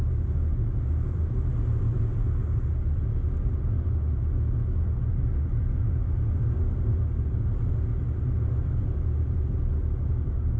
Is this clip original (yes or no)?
yes